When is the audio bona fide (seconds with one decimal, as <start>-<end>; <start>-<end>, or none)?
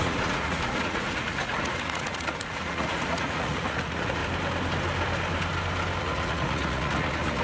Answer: 4.2-6.0